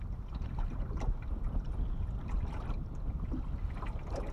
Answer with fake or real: real